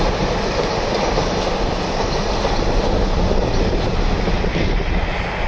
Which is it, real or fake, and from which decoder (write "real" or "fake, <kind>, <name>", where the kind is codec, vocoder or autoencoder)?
real